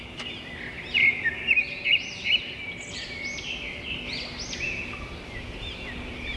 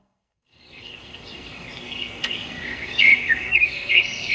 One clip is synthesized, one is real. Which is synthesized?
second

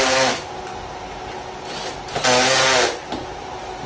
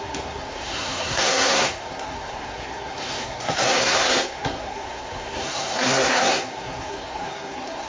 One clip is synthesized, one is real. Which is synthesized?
second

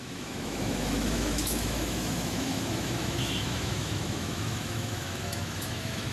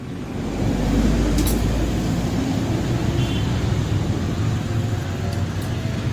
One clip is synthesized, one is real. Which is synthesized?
first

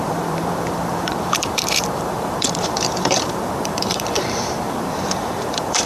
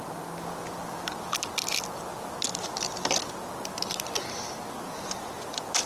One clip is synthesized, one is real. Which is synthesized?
first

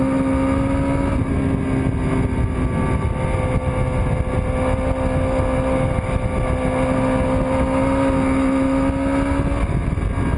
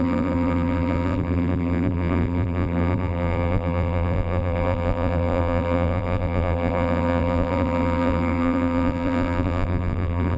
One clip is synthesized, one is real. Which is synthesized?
second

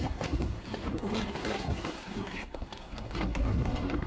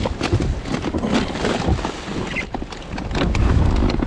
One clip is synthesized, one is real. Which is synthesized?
first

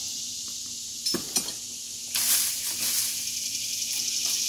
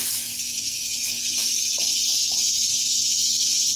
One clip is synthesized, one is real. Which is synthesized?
second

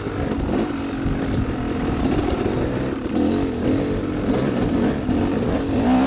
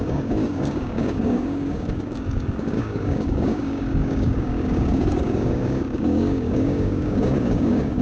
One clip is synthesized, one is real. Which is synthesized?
second